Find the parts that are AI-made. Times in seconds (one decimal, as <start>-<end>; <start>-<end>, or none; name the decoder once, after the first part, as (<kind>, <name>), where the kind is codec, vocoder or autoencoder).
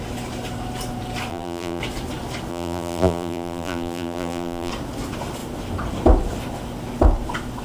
1.3-1.8 (vocoder, BigVGAN v2); 2.5-4.7